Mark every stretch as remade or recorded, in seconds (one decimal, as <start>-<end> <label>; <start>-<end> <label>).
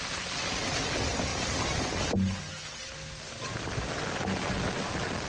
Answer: 0.0-5.3 recorded